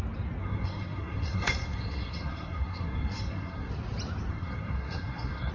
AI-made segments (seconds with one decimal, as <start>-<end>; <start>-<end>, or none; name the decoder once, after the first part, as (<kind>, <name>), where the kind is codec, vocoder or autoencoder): 0.4-3.7 (codec, SNAC); 4.3-5.5